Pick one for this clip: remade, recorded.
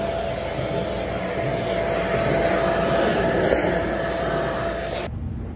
recorded